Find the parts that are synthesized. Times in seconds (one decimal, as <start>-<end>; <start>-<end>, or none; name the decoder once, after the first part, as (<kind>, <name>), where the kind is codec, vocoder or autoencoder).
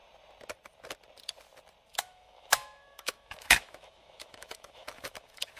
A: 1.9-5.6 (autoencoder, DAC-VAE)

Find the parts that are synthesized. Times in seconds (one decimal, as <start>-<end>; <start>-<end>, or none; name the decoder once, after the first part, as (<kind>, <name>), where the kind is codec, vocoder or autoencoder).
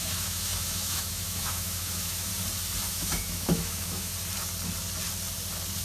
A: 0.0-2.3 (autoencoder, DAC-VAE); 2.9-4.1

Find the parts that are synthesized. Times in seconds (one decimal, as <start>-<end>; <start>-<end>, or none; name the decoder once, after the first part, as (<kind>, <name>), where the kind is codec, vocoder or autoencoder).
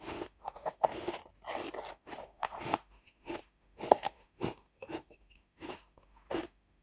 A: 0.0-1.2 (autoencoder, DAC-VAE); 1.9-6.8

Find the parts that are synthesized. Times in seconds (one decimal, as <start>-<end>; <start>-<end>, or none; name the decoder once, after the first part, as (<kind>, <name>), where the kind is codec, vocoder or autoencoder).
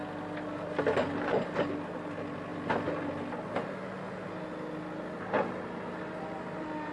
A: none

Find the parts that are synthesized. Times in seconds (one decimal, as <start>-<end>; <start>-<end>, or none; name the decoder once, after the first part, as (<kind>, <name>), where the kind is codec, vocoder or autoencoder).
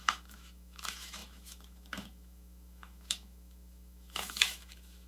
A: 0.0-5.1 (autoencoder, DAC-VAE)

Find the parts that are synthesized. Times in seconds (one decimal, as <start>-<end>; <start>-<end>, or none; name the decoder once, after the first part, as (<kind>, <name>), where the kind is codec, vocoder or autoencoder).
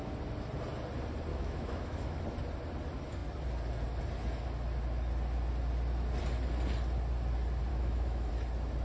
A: 1.3-2.2 (autoencoder, DAC-VAE); 7.7-8.3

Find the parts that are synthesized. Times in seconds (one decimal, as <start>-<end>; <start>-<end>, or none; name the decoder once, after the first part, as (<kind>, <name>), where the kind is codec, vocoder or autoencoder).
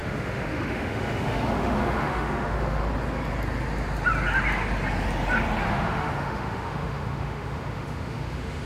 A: 0.0-2.8 (autoencoder, DAC-VAE); 5.7-8.7